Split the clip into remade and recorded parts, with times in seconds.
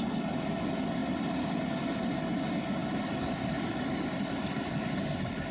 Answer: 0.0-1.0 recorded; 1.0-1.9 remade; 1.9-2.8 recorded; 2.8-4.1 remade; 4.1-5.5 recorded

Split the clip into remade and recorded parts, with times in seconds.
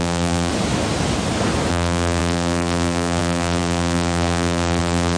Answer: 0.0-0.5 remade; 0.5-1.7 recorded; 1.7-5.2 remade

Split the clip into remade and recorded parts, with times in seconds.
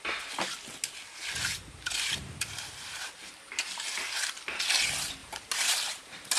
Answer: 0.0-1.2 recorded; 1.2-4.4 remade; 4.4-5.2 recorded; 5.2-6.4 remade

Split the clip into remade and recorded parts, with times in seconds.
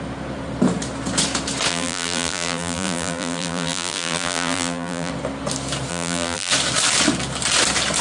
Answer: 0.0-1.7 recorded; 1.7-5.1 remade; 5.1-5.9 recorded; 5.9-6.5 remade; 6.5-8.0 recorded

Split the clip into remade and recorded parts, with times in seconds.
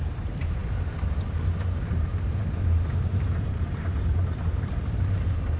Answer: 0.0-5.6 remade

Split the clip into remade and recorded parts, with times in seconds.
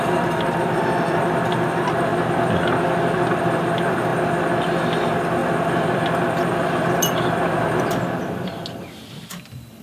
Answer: 0.0-2.1 remade; 2.1-3.4 recorded; 3.4-4.1 remade; 4.1-5.0 recorded; 5.0-9.8 remade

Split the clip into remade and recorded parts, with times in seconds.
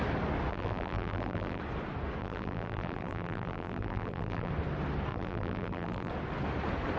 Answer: 0.0-0.5 recorded; 0.5-1.6 remade; 1.6-2.2 recorded; 2.2-4.5 remade; 4.5-5.1 recorded; 5.1-6.1 remade; 6.1-7.0 recorded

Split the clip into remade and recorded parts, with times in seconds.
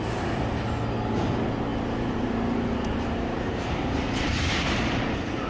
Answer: 0.0-1.7 recorded; 1.7-5.0 remade; 5.0-5.5 recorded